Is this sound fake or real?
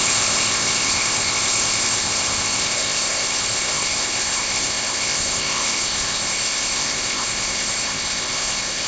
fake